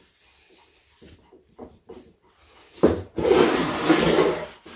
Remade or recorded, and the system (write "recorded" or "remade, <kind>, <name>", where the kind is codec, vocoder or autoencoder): recorded